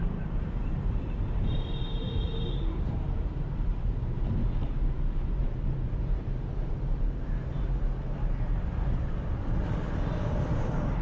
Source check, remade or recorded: remade